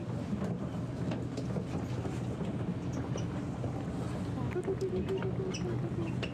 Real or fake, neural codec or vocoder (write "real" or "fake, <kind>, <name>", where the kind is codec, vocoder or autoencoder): real